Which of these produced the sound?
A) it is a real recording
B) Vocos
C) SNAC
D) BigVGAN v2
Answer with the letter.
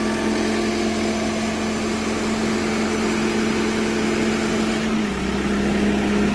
A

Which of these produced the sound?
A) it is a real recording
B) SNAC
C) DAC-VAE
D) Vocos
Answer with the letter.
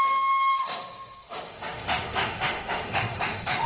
C